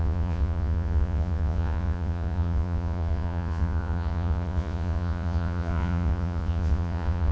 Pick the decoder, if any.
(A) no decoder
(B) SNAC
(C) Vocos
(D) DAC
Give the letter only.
C